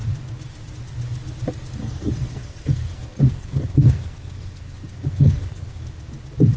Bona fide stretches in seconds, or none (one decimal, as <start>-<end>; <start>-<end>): 0.0-1.8; 5.8-6.6